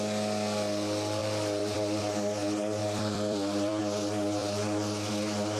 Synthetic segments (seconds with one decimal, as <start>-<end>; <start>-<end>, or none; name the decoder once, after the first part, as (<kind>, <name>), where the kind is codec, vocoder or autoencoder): 1.2-2.0 (vocoder, BigVGAN v2); 2.8-3.8; 4.4-5.1